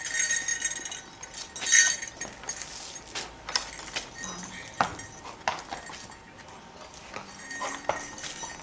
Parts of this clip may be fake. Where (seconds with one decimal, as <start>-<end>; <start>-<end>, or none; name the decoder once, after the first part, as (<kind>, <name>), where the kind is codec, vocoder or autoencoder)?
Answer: none